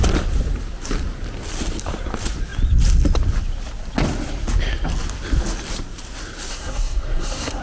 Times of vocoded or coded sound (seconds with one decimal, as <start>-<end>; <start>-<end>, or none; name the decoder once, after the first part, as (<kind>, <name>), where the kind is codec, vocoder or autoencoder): 6.5-7.6 (codec, SNAC)